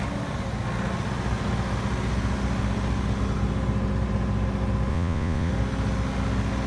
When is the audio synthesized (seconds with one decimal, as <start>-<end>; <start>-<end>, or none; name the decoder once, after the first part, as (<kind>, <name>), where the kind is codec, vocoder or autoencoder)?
4.9-5.5 (vocoder, Vocos)